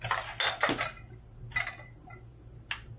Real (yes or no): yes